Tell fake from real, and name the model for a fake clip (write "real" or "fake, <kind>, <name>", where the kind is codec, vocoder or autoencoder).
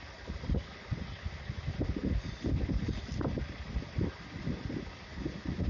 real